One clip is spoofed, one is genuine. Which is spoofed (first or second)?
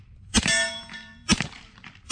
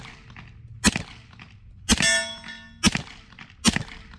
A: first